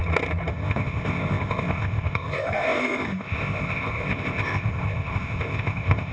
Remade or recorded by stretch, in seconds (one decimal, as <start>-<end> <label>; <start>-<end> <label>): 0.0-0.5 recorded; 0.5-6.1 remade